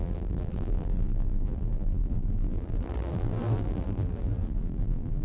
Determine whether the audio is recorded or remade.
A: remade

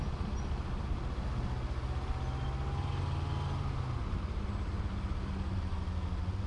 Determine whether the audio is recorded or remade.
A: recorded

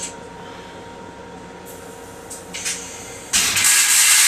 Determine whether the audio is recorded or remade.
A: recorded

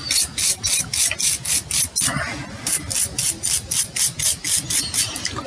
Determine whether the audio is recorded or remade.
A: recorded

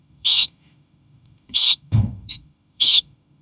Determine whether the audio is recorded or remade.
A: remade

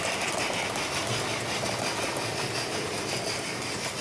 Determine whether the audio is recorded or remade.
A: recorded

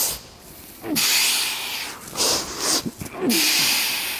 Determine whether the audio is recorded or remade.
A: recorded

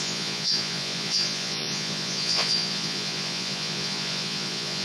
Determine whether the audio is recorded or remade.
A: remade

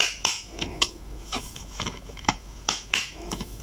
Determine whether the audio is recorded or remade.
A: remade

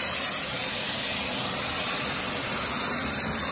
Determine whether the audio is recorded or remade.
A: remade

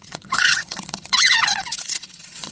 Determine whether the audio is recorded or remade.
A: remade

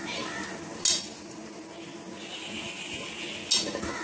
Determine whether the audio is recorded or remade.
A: recorded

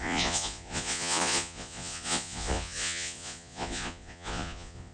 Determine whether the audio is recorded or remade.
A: remade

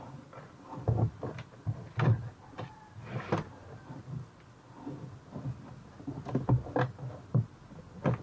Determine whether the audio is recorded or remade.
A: recorded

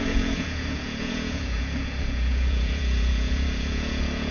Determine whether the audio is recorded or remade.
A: remade